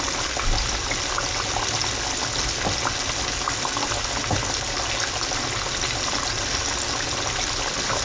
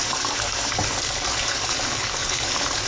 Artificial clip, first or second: second